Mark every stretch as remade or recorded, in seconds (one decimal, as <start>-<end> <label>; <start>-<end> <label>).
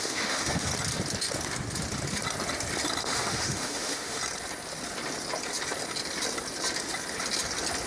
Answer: 0.0-0.7 remade; 0.7-3.0 recorded; 3.0-4.2 remade; 4.2-7.9 recorded